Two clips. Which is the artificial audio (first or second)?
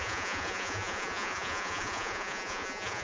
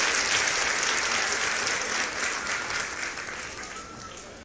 first